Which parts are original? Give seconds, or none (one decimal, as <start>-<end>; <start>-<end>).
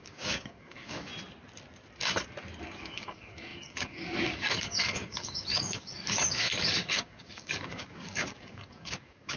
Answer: 1.1-2.6